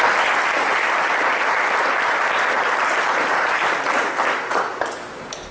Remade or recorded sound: recorded